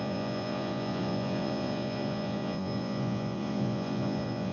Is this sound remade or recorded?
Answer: remade